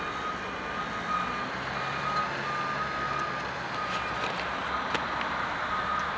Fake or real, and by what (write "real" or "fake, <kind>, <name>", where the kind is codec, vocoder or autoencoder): real